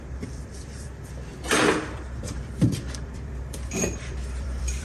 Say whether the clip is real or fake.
fake